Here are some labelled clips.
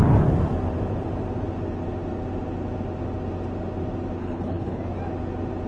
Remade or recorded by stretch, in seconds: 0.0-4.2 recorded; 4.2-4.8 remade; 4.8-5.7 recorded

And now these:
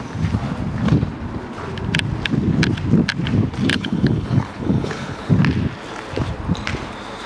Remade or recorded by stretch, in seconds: 0.0-3.7 recorded; 3.7-5.3 remade; 5.3-7.3 recorded

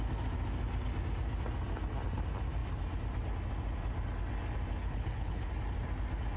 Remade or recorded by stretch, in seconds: 0.0-4.8 recorded; 4.8-5.5 remade; 5.5-6.4 recorded

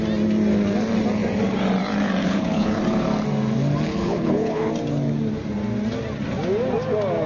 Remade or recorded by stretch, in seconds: 0.0-2.2 recorded; 2.2-2.8 remade; 2.8-3.9 recorded; 3.9-4.7 remade; 4.7-7.3 recorded

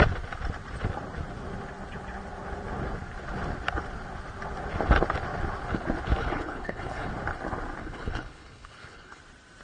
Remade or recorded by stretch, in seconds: 0.0-6.2 recorded; 6.2-7.1 remade; 7.1-7.8 recorded; 7.8-9.2 remade; 9.2-9.6 recorded

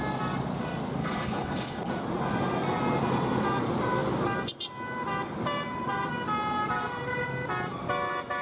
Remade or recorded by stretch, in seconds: 0.0-1.0 recorded; 1.0-1.9 remade; 1.9-8.4 recorded

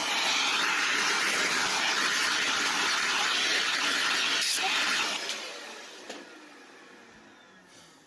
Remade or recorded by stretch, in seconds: 0.0-8.1 recorded